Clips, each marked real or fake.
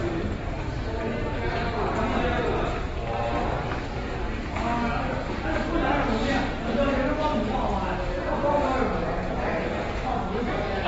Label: real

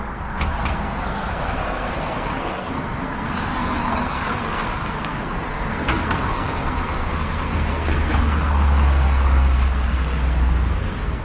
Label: fake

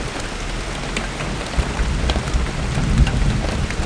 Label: real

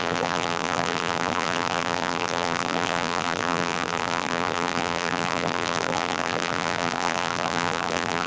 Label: fake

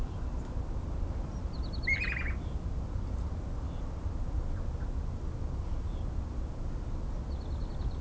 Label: real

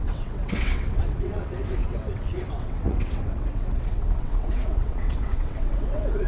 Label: fake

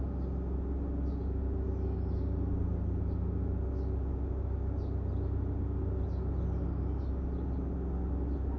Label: real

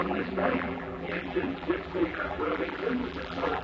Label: fake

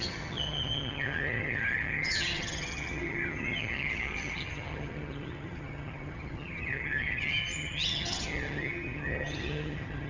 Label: fake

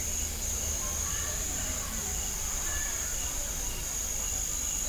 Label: real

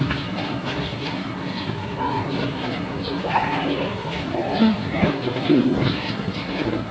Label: fake